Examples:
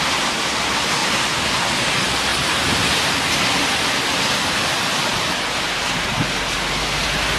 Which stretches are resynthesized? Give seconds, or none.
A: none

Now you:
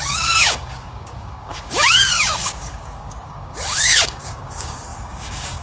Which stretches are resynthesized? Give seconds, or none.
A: 0.0-5.6 (codec, DAC)

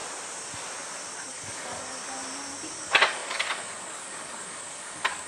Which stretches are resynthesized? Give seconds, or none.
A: 1.3-2.0 (codec, DAC); 2.7-5.3

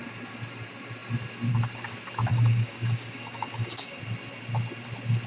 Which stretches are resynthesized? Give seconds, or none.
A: 2.3-4.0 (codec, DAC)

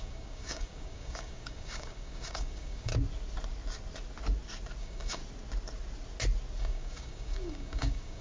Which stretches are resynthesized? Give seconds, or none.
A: 0.0-2.9 (codec, DAC); 4.8-5.2; 6.6-8.2

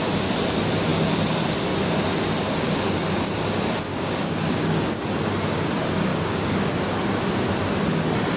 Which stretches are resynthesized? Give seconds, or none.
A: 3.9-5.0 (codec, DAC); 6.1-6.7

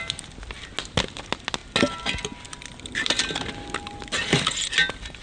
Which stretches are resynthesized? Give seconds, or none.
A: none

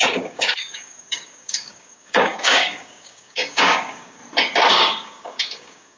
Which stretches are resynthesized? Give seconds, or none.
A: 0.0-4.2 (codec, DAC); 4.7-6.0